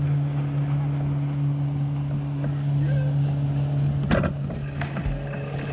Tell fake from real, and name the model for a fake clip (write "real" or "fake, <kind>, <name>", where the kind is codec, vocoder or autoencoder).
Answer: real